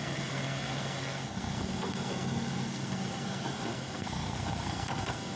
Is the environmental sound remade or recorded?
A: remade